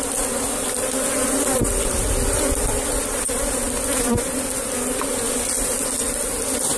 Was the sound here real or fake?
real